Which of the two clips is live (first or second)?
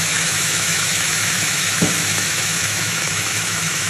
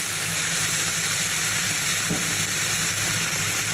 second